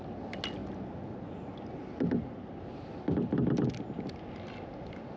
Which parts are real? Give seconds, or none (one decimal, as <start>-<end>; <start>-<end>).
0.0-5.2